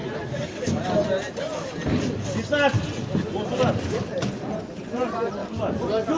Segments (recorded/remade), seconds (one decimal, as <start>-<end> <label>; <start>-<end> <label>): 0.0-6.2 recorded